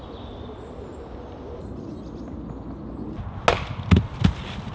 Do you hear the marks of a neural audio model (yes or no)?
no